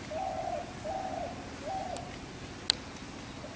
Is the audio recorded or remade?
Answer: recorded